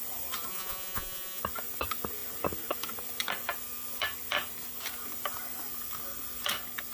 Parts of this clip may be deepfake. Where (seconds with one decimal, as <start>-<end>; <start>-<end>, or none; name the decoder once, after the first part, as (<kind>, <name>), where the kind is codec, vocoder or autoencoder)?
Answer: 0.5-1.4 (vocoder, Vocos)